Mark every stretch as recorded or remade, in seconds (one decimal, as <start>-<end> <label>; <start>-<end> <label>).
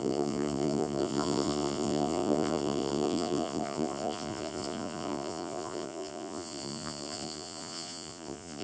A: 0.0-8.6 remade